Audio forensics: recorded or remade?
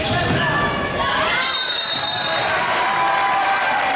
recorded